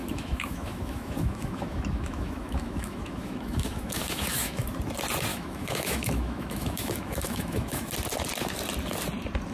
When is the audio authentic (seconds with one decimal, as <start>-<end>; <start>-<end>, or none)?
4.7-5.3; 7.9-9.5